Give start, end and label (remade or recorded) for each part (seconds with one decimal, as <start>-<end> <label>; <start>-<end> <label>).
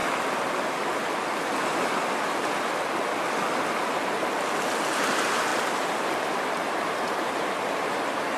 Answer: 0.0-5.5 recorded; 5.5-8.4 remade